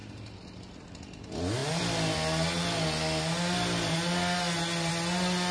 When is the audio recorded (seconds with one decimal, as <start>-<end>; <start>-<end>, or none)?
1.0-5.5